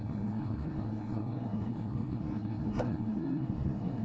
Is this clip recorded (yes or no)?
no